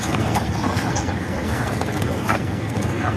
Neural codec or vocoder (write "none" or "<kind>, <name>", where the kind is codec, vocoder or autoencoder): codec, SNAC